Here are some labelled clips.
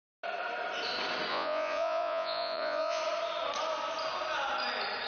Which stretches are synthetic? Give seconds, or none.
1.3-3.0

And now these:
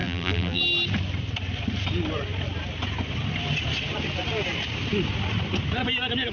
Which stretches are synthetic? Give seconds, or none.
0.0-0.6

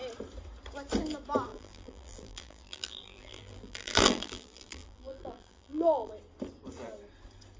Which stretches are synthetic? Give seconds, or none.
1.5-6.1

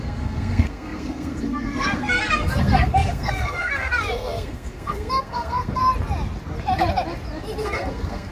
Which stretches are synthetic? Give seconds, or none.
0.0-5.8; 7.6-8.3

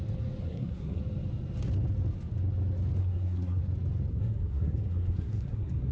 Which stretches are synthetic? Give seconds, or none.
0.4-1.0; 3.0-3.6; 4.1-5.9

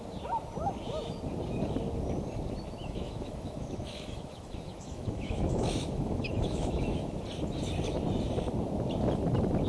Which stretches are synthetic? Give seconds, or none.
2.8-7.2

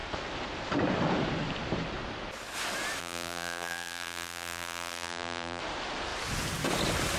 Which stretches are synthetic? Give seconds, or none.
3.0-5.6

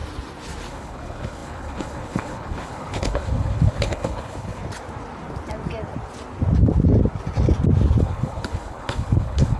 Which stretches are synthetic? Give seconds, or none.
0.7-4.6; 8.0-9.6